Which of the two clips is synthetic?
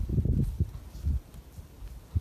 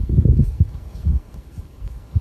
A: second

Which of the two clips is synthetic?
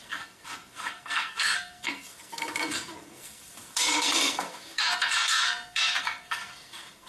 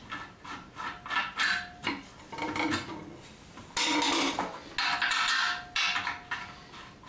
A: first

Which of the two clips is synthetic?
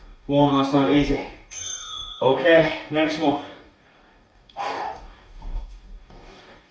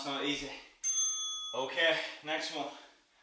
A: first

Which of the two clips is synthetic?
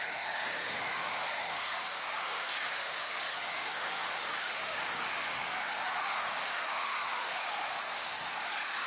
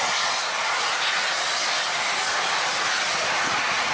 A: first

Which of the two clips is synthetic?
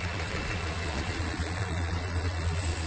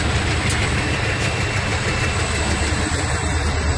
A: first